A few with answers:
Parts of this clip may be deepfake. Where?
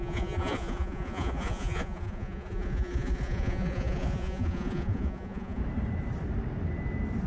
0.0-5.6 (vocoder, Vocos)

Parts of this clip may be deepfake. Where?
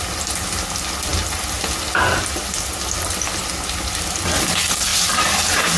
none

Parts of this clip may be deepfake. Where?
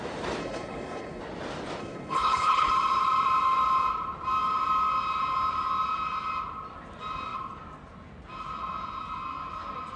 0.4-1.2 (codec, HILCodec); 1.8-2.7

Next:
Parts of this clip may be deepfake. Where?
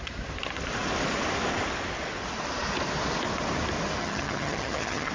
4.0-5.1 (vocoder, HiFi-GAN)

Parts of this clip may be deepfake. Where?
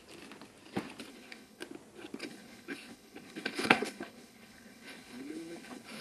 1.1-1.6 (codec, HILCodec); 2.2-6.0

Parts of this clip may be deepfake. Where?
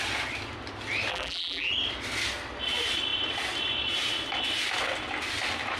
1.1-1.7 (vocoder, BigVGAN v2)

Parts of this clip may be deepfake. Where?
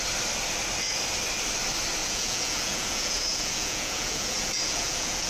2.0-5.3 (vocoder, Vocos)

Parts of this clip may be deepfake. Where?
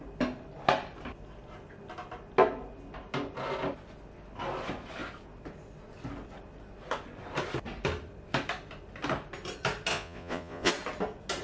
9.9-10.7 (vocoder, Vocos)